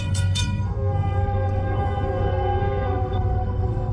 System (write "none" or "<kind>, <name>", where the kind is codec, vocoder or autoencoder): codec, SNAC